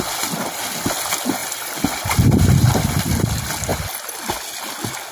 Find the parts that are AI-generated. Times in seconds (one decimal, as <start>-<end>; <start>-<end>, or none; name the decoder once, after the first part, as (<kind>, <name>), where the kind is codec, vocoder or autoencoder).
1.4-2.0 (vocoder, BigVGAN v2); 3.7-4.2